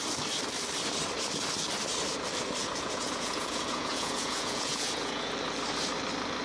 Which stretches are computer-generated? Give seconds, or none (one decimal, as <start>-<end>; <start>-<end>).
2.6-5.3